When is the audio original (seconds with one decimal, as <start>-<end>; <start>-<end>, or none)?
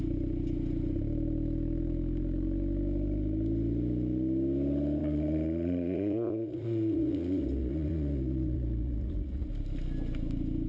0.0-5.0; 9.5-10.7